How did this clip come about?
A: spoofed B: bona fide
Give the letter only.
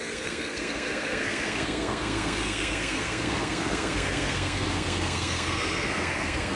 A